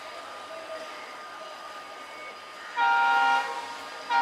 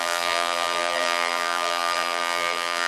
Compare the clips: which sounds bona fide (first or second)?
first